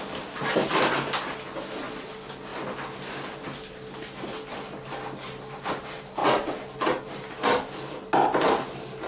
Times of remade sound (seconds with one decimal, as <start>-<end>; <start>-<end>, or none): none